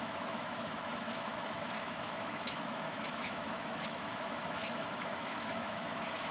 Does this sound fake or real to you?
fake